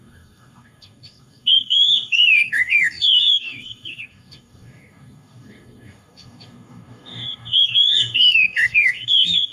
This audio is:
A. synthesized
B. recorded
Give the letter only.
A